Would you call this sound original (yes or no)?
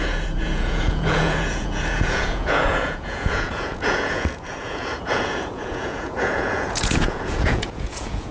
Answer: no